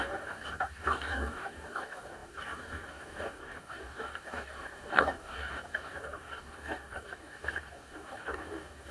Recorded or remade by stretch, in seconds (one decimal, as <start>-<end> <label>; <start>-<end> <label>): 0.0-8.9 remade